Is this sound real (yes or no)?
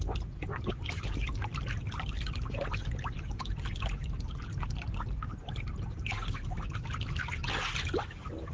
yes